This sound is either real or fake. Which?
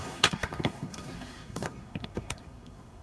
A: fake